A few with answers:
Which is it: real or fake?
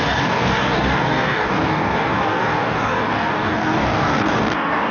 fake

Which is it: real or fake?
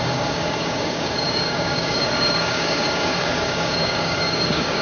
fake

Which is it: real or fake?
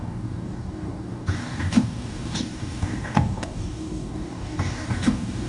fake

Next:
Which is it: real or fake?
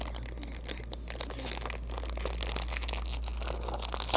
real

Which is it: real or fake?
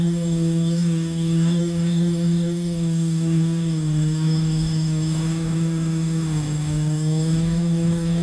fake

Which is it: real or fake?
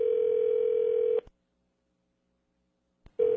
real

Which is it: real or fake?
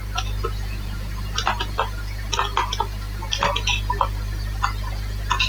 real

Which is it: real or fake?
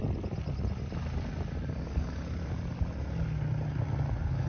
real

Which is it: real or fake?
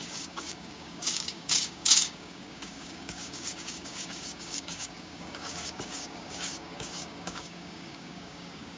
fake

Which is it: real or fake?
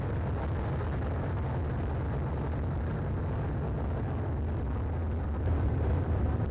real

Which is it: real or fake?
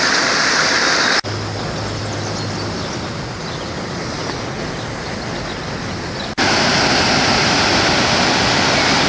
real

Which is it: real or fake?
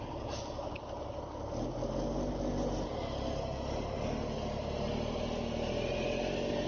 real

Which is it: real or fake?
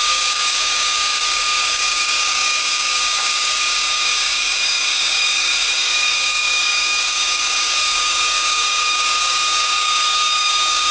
fake